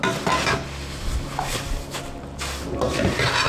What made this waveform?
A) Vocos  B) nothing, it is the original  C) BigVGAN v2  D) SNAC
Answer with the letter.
B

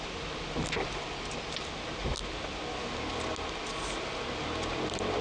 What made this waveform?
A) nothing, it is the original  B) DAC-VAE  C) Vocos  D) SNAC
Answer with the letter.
A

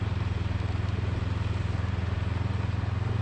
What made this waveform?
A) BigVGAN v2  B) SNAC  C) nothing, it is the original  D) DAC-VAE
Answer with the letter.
C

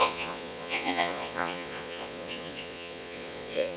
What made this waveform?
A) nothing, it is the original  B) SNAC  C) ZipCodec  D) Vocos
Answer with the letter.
D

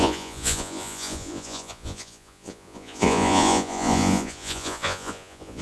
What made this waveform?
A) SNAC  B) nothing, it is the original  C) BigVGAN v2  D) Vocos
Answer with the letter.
D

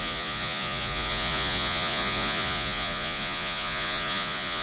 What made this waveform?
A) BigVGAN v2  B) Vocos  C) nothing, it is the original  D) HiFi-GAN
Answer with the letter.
B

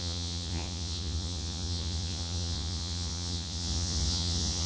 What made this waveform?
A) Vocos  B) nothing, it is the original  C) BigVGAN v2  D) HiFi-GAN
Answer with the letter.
A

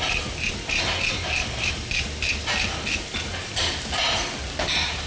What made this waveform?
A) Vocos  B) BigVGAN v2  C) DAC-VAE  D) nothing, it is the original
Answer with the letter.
D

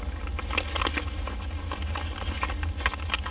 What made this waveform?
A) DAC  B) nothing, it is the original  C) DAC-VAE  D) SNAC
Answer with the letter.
B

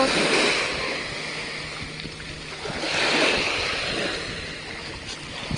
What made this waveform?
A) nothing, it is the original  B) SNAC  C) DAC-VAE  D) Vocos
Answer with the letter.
A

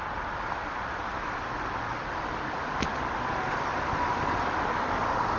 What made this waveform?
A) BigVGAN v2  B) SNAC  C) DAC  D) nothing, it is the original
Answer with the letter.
D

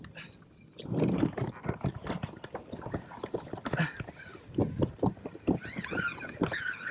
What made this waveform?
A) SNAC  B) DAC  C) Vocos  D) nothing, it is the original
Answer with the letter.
D